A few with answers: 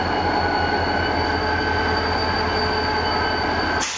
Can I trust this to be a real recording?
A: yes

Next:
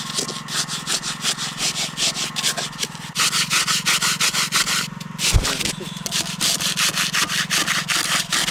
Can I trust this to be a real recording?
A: yes